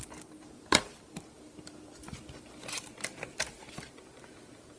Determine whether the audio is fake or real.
real